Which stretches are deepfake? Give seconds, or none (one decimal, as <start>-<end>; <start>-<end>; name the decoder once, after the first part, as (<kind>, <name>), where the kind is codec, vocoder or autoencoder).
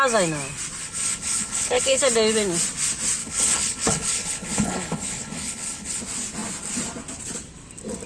0.8-2.0 (codec, HILCodec); 3.2-6.0